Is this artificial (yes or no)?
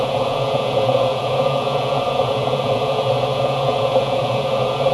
yes